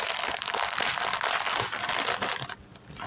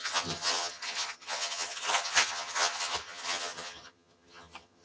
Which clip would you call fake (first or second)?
second